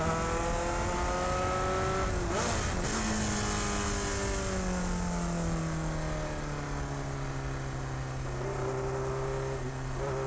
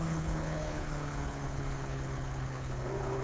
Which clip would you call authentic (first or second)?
first